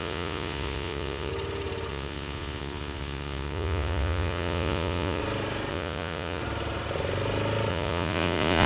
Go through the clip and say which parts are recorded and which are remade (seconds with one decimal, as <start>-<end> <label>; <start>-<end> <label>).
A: 0.0-1.3 remade; 1.3-1.9 recorded; 1.9-5.2 remade; 5.2-5.7 recorded; 5.7-6.4 remade; 6.4-7.7 recorded; 7.7-8.7 remade